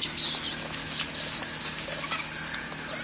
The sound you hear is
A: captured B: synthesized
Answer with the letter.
A